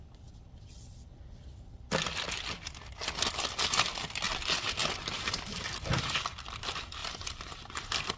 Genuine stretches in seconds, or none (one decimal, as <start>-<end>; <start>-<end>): 0.0-4.3; 6.6-7.0